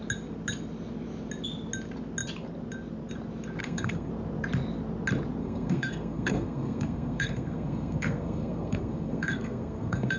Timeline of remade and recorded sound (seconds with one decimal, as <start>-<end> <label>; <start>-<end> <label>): 0.0-3.6 recorded; 3.6-4.1 remade; 4.1-5.4 recorded; 5.4-10.2 remade